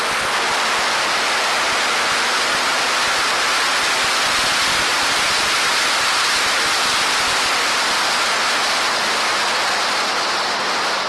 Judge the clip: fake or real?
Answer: real